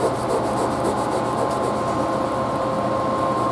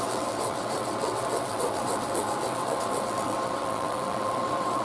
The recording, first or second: first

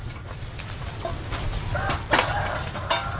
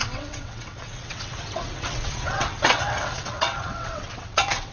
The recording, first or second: first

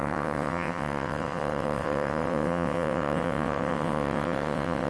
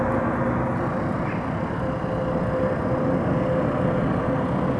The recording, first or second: second